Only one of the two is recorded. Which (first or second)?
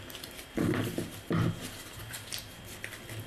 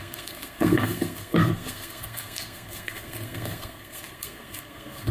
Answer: first